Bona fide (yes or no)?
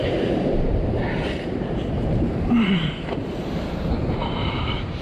no